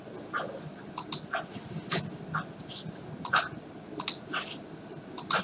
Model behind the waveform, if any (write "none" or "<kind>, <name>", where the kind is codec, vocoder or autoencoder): none